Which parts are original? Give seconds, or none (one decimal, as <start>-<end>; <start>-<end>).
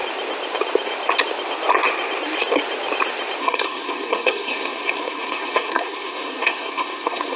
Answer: 0.0-3.4